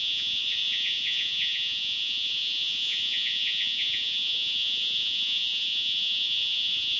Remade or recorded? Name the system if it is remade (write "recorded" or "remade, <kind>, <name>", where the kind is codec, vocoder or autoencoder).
remade, vocoder, Vocos